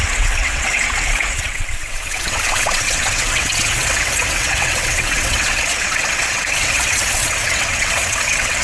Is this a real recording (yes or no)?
no